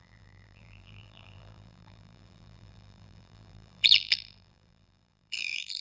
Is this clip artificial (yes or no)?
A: yes